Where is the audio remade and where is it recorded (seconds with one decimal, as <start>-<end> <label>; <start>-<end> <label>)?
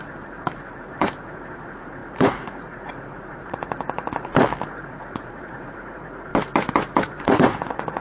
0.0-4.3 remade; 4.3-4.9 recorded; 4.9-6.3 remade; 6.3-7.1 recorded; 7.1-8.0 remade